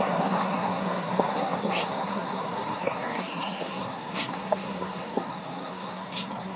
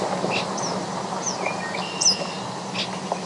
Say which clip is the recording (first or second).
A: second